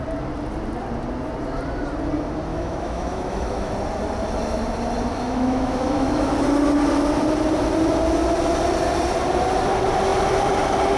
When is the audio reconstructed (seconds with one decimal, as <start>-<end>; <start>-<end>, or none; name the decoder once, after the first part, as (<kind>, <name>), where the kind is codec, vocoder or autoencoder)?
2.5-3.7 (autoencoder, DAC-VAE); 5.1-6.3